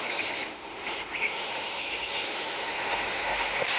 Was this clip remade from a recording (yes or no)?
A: yes